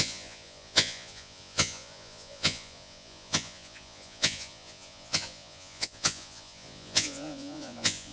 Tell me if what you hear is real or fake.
fake